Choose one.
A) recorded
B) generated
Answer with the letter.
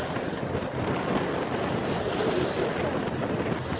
A